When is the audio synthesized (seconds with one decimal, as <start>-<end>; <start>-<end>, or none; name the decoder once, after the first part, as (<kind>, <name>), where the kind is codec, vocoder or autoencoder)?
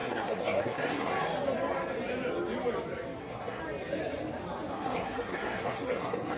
0.0-1.1 (codec, SNAC); 3.2-3.6; 4.7-6.4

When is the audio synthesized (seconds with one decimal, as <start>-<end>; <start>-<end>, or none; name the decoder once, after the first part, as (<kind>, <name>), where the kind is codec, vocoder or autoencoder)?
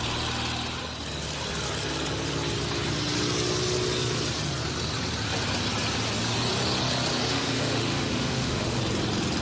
7.2-8.8 (autoencoder, DAC-VAE)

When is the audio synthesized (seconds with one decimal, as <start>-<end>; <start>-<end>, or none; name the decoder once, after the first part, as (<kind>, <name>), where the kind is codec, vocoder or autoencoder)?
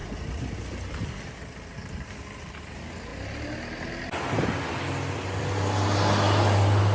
none